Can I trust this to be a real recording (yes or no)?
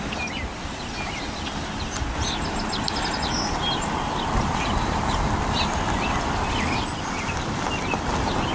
yes